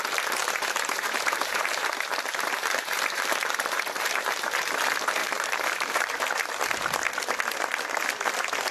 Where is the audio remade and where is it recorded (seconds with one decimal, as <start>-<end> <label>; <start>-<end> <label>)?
0.0-0.4 recorded; 0.4-4.7 remade; 4.7-5.2 recorded; 5.2-6.5 remade; 6.5-8.7 recorded